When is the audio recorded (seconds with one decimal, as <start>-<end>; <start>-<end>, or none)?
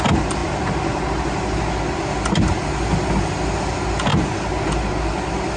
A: 0.0-5.6